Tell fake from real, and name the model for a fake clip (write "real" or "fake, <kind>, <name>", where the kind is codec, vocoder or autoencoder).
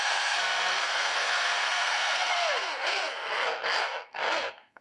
fake, codec, SNAC